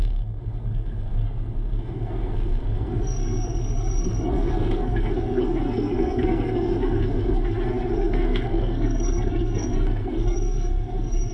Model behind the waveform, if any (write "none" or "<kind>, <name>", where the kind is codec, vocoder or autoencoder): codec, SNAC